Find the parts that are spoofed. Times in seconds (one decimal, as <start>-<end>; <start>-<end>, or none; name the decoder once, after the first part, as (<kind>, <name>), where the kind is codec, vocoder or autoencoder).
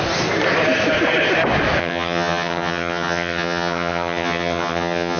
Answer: 1.8-5.2 (vocoder, HiFi-GAN)